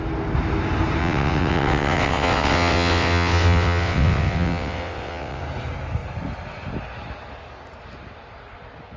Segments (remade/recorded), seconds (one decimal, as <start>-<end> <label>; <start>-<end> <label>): 0.0-1.0 recorded; 1.0-5.4 remade; 5.4-9.0 recorded